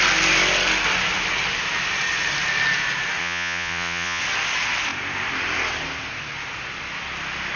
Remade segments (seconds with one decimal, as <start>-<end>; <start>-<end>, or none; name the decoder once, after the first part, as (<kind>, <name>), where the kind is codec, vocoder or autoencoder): 3.2-4.2 (vocoder, Vocos)